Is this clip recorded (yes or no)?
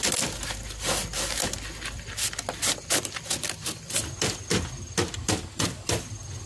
yes